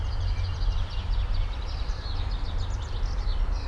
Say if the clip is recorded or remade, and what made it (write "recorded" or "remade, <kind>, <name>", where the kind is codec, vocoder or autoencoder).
remade, vocoder, BigVGAN v2